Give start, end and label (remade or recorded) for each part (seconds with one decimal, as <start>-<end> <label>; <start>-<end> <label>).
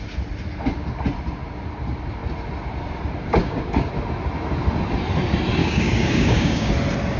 0.0-3.4 recorded; 3.4-3.9 remade; 3.9-5.6 recorded; 5.6-6.7 remade; 6.7-7.2 recorded